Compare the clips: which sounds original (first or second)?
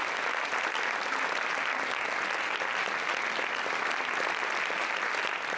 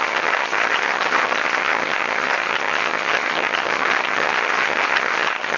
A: first